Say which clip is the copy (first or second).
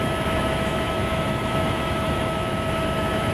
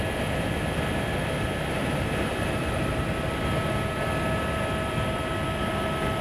first